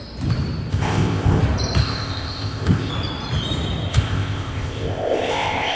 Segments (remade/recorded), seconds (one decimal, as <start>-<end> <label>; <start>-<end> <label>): 0.0-0.7 recorded; 0.7-1.4 remade; 1.4-1.8 recorded; 1.8-2.9 remade; 2.9-3.9 recorded; 3.9-5.8 remade